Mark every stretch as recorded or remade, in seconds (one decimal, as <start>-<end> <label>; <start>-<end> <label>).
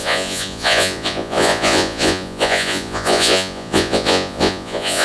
0.0-5.0 remade